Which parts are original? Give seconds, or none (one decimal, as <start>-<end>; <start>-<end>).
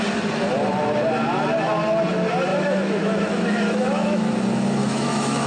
0.0-2.5; 4.3-4.8